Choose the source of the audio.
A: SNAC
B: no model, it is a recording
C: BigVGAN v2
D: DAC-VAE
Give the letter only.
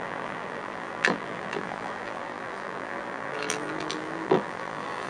C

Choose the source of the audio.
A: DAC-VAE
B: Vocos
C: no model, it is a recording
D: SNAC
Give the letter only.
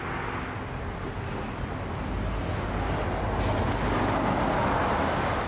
C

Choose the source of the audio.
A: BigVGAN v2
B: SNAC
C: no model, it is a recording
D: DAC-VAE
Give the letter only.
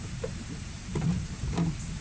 A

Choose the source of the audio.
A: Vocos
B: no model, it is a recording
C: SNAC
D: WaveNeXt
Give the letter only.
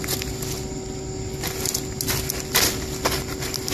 B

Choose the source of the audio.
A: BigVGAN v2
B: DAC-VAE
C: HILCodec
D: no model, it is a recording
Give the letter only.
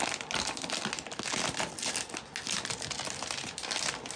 D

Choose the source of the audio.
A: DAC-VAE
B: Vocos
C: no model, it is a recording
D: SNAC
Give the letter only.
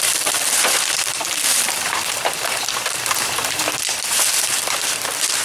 C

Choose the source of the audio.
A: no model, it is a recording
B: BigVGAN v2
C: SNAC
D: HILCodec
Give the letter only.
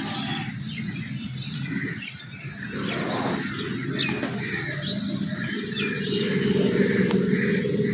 A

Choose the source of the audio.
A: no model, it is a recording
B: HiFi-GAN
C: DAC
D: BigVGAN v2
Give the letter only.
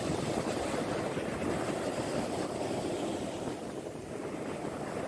A